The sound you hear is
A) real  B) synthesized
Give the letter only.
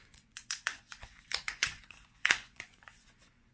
B